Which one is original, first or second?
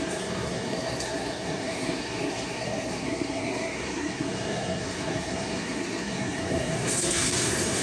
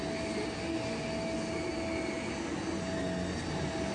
second